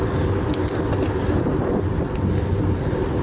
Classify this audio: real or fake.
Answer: real